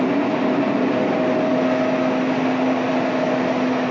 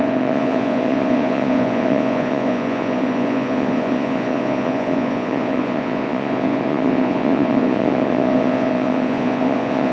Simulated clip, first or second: second